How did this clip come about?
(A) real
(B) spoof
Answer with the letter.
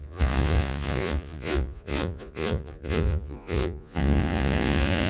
B